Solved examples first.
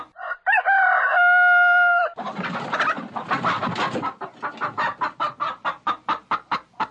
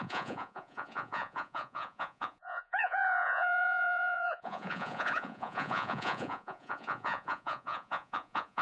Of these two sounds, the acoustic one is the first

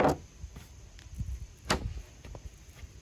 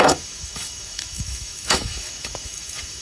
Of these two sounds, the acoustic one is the first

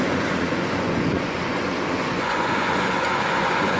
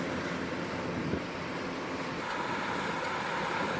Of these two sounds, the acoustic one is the second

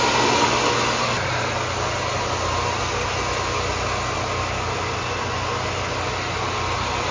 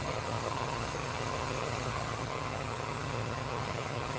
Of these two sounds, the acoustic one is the first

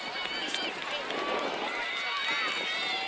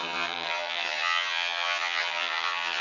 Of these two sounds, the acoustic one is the first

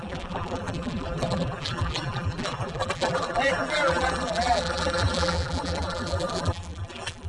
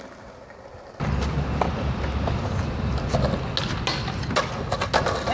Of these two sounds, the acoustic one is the second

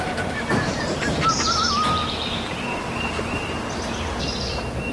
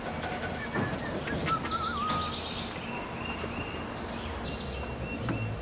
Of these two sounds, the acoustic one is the second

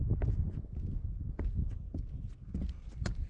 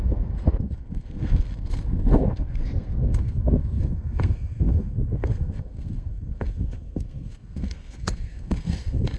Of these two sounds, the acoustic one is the first